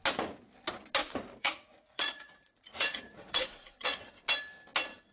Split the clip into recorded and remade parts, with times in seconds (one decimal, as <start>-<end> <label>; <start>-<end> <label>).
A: 0.0-1.0 recorded; 1.0-4.1 remade; 4.1-5.1 recorded

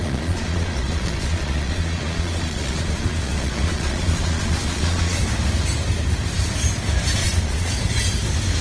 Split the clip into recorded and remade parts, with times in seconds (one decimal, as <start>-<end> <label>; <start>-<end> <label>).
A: 0.0-5.2 remade; 5.2-7.2 recorded; 7.2-7.7 remade; 7.7-8.6 recorded

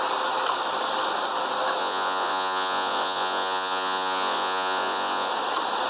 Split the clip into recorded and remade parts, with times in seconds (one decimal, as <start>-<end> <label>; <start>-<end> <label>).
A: 0.0-1.8 recorded; 1.8-5.3 remade; 5.3-5.9 recorded

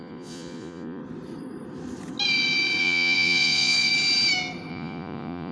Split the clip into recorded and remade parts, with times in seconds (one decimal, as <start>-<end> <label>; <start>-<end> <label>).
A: 0.0-1.0 remade; 1.0-2.8 recorded; 2.8-3.9 remade; 3.9-4.7 recorded; 4.7-5.5 remade

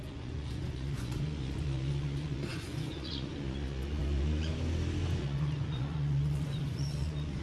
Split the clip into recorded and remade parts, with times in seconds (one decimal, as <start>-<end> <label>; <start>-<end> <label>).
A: 0.0-4.5 remade; 4.5-5.2 recorded; 5.2-7.4 remade